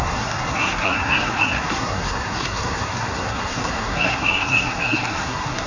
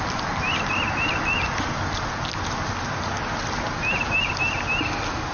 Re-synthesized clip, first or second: first